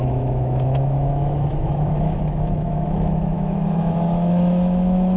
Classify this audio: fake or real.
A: fake